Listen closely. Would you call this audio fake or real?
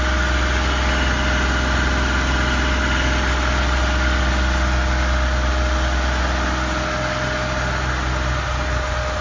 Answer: real